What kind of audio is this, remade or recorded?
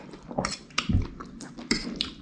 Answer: remade